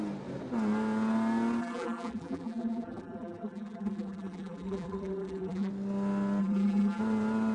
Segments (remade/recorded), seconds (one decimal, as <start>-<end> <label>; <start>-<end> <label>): 0.0-1.6 recorded; 1.6-5.7 remade; 5.7-6.4 recorded; 6.4-7.0 remade; 7.0-7.5 recorded